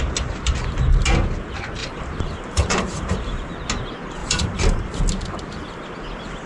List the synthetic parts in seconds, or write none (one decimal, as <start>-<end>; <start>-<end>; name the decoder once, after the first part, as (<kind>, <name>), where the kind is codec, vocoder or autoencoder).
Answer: 1.8-3.6 (vocoder, BigVGAN v2); 4.2-4.9